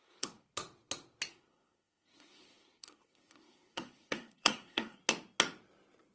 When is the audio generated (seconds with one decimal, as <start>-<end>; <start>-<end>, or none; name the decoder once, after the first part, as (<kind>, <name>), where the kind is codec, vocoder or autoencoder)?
0.0-0.5 (codec, SNAC); 1.3-5.0